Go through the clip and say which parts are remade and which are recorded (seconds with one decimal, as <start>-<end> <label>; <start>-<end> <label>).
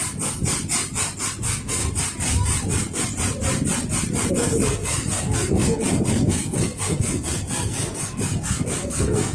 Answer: 0.0-1.4 recorded; 1.4-1.8 remade; 1.8-4.3 recorded; 4.3-9.3 remade